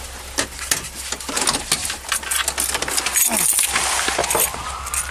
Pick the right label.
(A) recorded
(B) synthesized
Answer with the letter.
A